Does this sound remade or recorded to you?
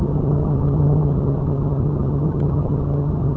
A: remade